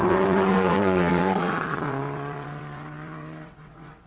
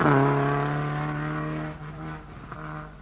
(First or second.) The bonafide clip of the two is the second